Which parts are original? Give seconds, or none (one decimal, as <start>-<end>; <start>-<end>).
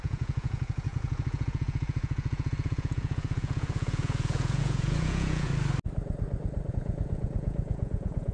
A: 5.5-6.7